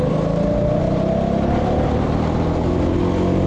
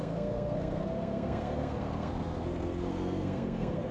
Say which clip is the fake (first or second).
second